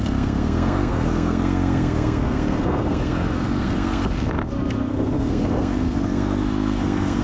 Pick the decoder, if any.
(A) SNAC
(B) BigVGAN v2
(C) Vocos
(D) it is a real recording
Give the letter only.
A